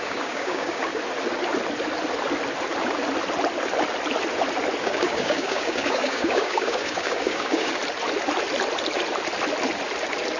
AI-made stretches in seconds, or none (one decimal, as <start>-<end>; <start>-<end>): 0.0-0.9; 4.8-7.8